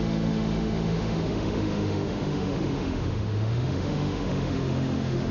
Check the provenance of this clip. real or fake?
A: fake